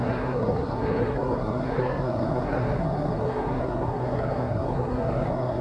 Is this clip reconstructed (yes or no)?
yes